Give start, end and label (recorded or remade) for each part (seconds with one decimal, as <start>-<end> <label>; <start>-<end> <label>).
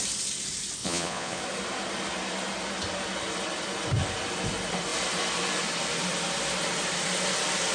0.0-0.8 recorded; 0.8-1.4 remade; 1.4-7.7 recorded